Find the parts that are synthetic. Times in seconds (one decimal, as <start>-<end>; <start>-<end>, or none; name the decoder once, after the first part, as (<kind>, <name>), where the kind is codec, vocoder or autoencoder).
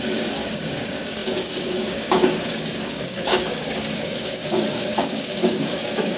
0.0-6.2 (codec, DAC)